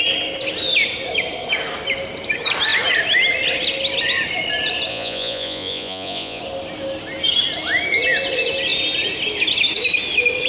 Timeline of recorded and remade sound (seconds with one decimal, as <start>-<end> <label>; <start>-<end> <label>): 0.0-4.9 recorded; 4.9-6.4 remade; 6.4-10.5 recorded